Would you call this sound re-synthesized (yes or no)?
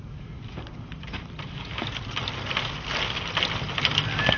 no